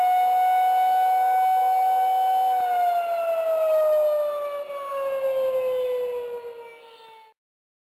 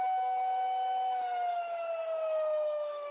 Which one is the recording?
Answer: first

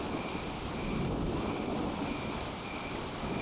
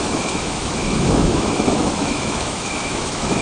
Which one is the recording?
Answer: first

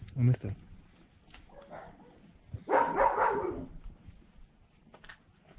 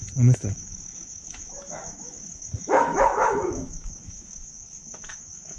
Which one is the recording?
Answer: first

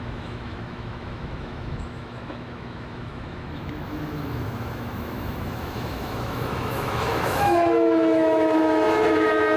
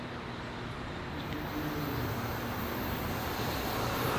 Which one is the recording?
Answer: second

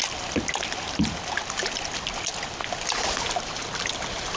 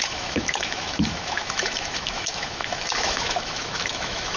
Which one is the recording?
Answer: first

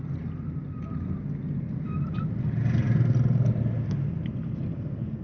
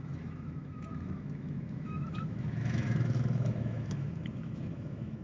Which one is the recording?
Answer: first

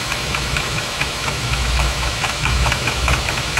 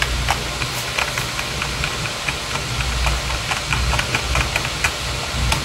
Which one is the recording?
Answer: second